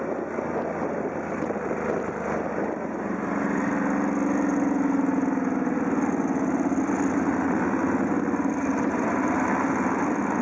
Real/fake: real